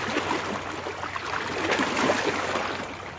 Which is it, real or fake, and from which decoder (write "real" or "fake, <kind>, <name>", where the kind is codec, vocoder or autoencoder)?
real